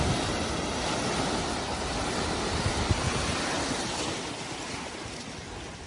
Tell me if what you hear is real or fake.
real